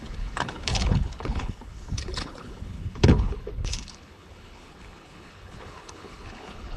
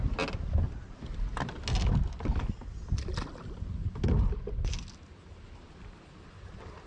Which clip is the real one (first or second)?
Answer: second